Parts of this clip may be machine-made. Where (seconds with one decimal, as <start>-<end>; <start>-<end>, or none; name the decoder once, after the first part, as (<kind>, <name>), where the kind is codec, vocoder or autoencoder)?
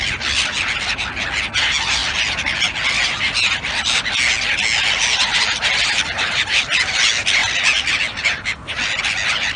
none